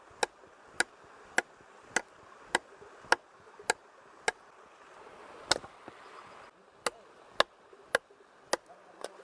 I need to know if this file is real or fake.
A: real